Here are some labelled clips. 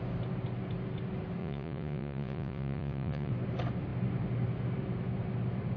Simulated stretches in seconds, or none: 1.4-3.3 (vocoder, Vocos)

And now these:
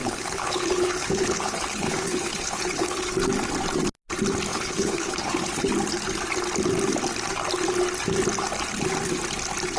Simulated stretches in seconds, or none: 0.0-3.1 (codec, HILCodec); 4.5-5.7